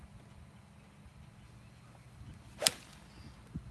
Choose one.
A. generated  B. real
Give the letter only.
B